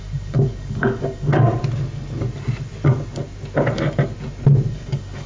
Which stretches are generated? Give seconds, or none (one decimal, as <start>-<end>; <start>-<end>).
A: 0.0-1.5; 4.7-5.3